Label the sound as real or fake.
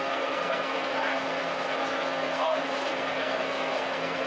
fake